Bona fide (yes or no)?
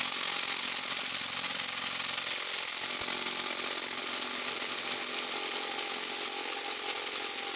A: yes